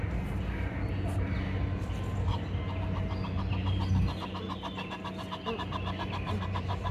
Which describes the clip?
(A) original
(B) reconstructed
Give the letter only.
A